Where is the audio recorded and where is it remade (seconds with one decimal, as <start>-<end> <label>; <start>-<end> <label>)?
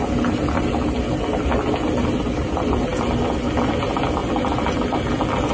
0.0-5.5 recorded